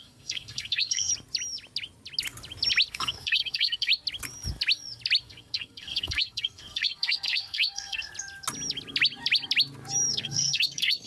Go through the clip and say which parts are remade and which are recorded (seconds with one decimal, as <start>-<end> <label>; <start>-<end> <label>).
0.0-1.1 remade; 1.1-2.9 recorded; 2.9-3.9 remade; 3.9-5.2 recorded; 5.2-8.1 remade; 8.1-10.1 recorded; 10.1-11.1 remade